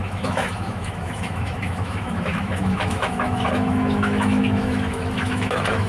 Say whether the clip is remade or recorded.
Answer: remade